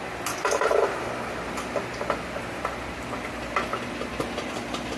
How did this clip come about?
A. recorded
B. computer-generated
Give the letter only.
A